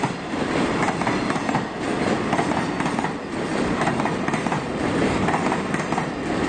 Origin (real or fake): real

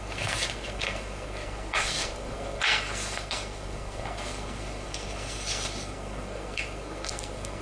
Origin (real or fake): fake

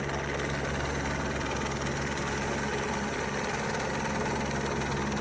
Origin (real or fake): real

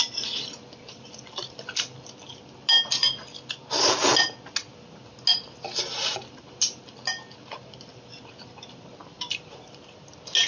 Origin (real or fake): real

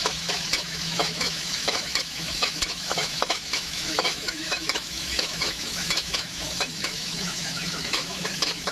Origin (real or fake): fake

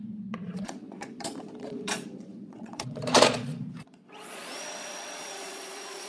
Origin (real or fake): fake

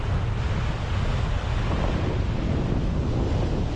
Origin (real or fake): real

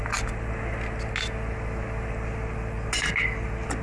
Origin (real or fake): real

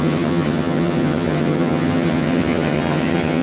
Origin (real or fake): fake